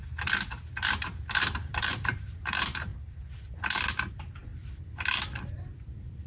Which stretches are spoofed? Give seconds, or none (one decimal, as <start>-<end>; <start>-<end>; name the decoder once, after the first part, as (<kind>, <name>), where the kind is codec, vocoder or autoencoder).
1.6-2.9 (vocoder, BigVGAN v2); 4.1-4.5; 5.4-6.3